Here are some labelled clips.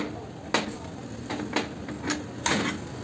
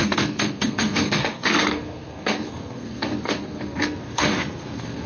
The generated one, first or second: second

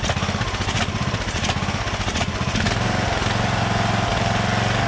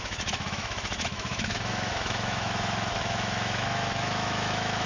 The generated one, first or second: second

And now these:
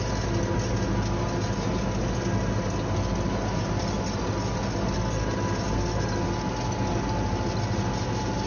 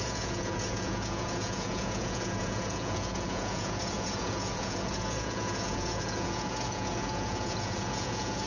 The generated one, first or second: second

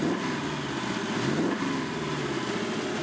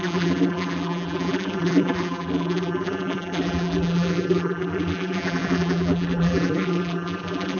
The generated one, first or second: second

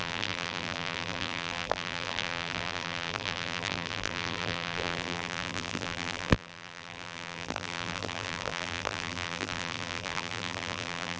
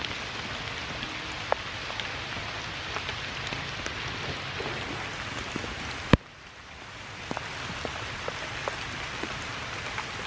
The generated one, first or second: first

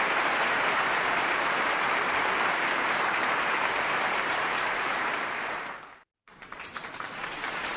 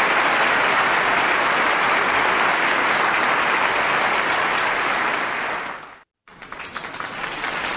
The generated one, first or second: first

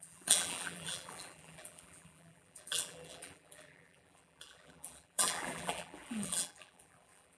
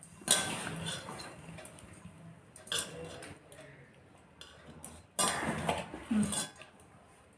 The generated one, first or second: first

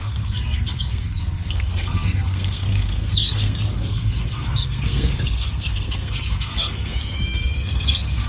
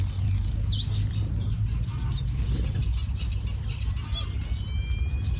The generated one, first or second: first